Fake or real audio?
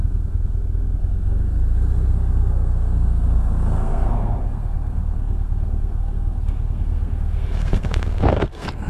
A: fake